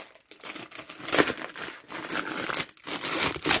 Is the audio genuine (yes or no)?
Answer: yes